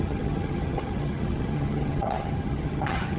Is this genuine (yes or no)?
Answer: no